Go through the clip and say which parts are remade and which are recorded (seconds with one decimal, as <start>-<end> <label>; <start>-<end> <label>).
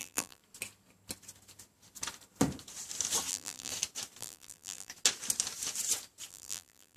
0.0-0.4 remade; 0.4-3.3 recorded; 3.3-3.7 remade; 3.7-4.2 recorded; 4.2-4.9 remade; 4.9-6.3 recorded; 6.3-7.0 remade